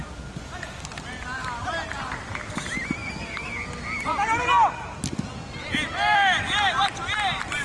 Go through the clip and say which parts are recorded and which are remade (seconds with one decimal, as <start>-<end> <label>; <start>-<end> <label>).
0.0-7.6 recorded